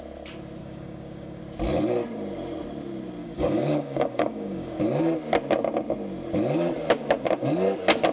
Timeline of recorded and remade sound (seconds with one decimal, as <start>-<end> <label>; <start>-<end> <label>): 0.0-0.6 recorded; 0.6-1.4 remade; 1.4-3.2 recorded; 3.2-4.8 remade; 4.8-8.1 recorded